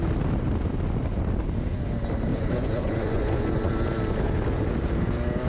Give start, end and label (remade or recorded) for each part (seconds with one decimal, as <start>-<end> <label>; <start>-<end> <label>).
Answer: 0.0-2.3 recorded; 2.3-3.7 remade; 3.7-5.5 recorded